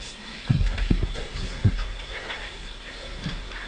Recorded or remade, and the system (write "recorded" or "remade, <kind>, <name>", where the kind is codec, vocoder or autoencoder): remade, codec, SNAC